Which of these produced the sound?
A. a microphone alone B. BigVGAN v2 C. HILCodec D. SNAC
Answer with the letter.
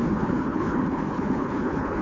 C